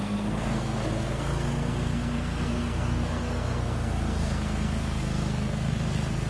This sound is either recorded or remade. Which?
remade